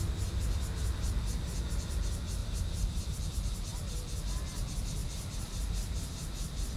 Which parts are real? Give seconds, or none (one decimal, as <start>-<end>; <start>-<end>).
0.0-2.4; 3.0-5.0

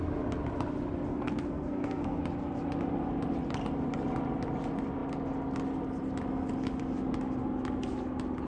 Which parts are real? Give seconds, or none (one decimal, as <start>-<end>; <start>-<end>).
0.0-1.1; 2.2-8.5

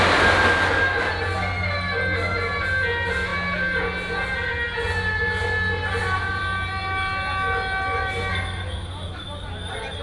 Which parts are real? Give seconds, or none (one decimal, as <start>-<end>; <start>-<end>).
0.0-10.0

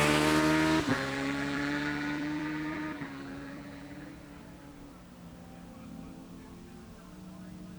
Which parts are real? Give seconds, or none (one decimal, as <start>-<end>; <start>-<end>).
0.0-0.9; 4.1-7.8

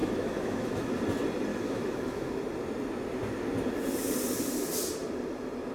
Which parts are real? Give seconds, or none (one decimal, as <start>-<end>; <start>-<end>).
0.9-1.5; 2.3-5.7